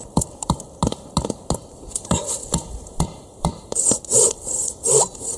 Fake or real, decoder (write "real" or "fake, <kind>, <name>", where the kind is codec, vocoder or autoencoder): real